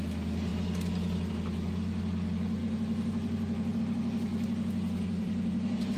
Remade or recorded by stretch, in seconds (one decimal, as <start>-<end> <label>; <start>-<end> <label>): 0.0-2.6 recorded; 2.6-3.8 remade; 3.8-4.3 recorded; 4.3-6.0 remade